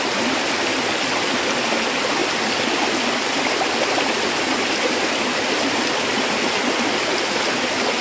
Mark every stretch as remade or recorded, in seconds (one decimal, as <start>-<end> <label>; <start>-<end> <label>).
0.0-8.0 recorded